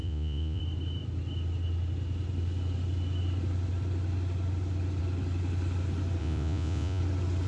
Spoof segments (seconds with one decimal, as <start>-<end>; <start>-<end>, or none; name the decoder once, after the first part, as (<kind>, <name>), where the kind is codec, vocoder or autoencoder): 0.0-0.6 (vocoder, Vocos); 6.2-7.0

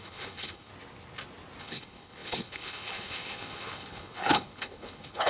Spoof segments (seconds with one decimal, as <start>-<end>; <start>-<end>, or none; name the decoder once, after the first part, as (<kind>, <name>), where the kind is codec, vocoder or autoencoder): 0.0-0.7 (codec, HILCodec); 1.6-5.3